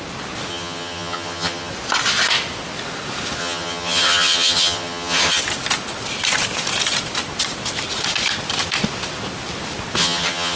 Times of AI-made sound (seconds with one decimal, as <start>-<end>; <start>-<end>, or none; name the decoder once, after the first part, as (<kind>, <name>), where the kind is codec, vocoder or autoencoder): 0.5-1.7 (vocoder, HiFi-GAN); 3.4-5.4; 10.0-10.6